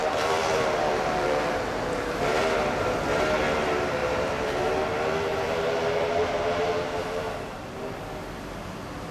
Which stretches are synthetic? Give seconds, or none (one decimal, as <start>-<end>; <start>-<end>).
0.0-2.4; 4.0-4.6; 5.3-8.0